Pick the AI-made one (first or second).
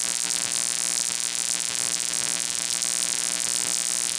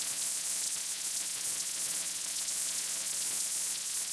second